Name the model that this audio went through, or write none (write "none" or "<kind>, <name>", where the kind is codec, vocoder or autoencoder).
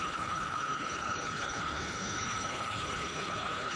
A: codec, HILCodec